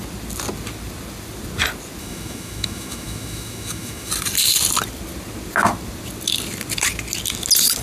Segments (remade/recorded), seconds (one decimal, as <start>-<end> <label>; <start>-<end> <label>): 0.0-2.0 recorded; 2.0-4.1 remade; 4.1-7.8 recorded